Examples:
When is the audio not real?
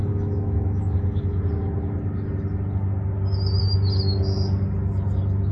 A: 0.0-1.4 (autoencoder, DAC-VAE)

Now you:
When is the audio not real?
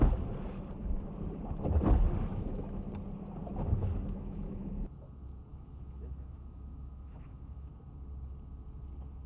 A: 2.3-2.9 (autoencoder, DAC-VAE); 3.8-4.7; 5.5-7.7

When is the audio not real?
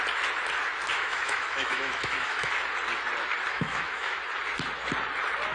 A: 0.9-2.5 (autoencoder, DAC-VAE); 3.5-4.2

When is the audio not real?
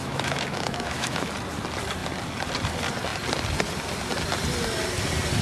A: 0.0-1.3 (autoencoder, DAC-VAE)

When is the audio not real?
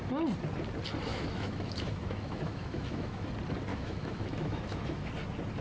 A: 1.1-3.3 (autoencoder, DAC-VAE); 3.7-5.1